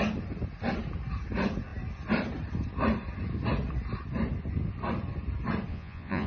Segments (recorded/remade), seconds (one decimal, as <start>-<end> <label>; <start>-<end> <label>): 0.0-5.7 recorded; 5.7-6.3 remade